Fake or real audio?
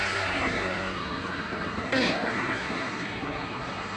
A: fake